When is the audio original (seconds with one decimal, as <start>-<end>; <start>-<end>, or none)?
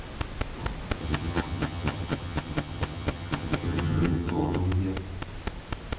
0.0-1.0; 4.6-6.0